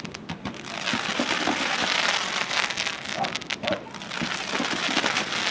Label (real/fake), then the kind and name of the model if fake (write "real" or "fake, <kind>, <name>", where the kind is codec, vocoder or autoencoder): real